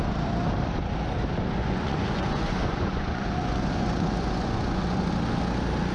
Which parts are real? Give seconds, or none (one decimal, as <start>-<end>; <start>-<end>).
0.0-1.6; 5.1-5.9